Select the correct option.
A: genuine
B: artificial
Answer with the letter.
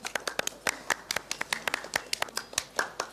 A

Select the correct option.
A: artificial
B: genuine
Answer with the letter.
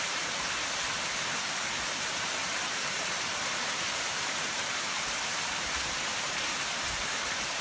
A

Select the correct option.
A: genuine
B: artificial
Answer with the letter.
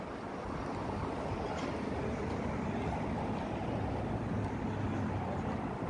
A